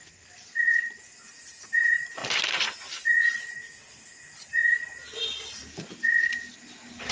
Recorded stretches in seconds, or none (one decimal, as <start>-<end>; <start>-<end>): 0.0-7.1